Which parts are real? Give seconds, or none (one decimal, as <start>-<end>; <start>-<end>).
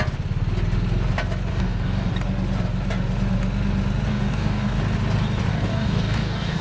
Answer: 0.0-1.5; 2.1-4.1; 4.8-5.5